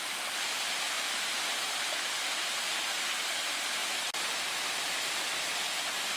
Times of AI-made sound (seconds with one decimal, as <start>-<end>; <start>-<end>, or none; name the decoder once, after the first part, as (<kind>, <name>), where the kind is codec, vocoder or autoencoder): none